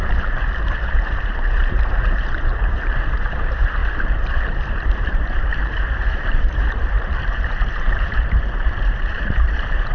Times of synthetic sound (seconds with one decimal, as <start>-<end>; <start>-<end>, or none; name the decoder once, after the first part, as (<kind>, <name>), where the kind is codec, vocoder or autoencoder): 0.0-9.9 (vocoder, BigVGAN v2)